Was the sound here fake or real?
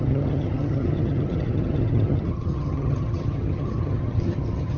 fake